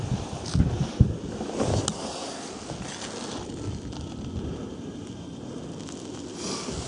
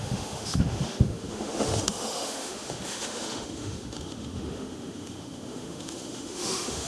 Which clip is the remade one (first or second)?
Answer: second